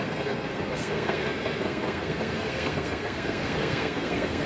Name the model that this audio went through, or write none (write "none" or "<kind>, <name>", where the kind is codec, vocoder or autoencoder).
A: codec, SNAC